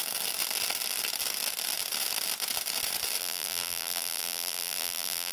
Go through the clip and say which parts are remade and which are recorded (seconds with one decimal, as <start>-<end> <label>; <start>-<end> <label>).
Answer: 0.0-3.2 recorded; 3.2-5.3 remade